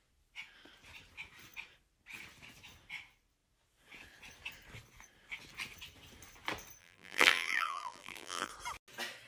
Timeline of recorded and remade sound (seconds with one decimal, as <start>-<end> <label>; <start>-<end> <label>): 0.0-6.8 recorded; 6.8-8.5 remade; 8.5-9.3 recorded